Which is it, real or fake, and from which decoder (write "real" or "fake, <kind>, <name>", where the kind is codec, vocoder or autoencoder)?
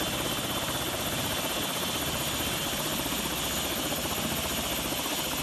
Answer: real